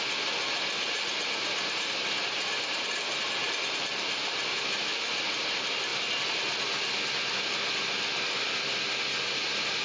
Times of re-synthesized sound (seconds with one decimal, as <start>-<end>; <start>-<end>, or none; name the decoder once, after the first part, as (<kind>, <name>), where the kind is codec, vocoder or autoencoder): 4.5-5.1 (autoencoder, DAC-VAE)